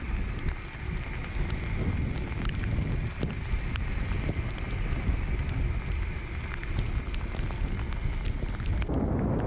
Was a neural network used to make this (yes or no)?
no